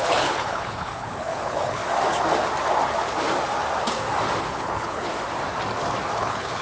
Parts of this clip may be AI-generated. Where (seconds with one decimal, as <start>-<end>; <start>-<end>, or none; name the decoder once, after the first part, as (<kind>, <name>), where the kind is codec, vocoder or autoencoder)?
0.0-1.8 (codec, HILCodec); 4.4-5.1; 6.1-6.6